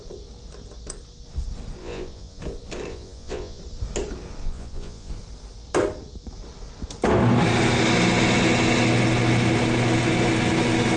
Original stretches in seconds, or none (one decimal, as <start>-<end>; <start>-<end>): 0.0-1.8; 2.4-2.9; 3.6-4.4; 5.1-11.0